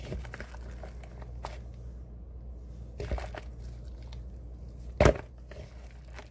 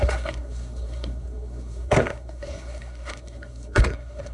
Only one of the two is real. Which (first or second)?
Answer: first